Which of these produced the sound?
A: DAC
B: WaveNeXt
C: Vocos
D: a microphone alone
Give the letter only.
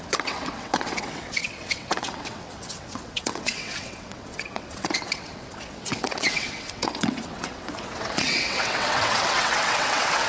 B